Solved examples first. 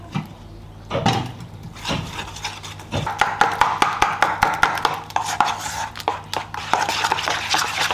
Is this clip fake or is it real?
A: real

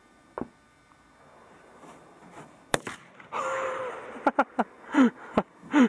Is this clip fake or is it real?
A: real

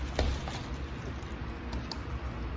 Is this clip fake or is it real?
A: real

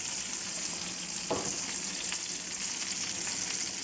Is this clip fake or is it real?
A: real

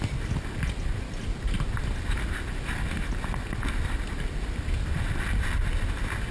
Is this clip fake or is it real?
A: real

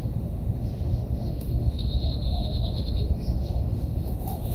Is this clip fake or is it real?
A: fake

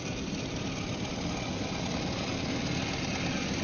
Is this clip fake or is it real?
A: real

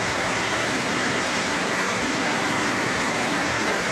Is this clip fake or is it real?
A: fake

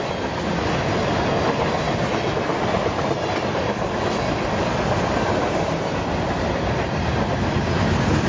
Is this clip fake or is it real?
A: real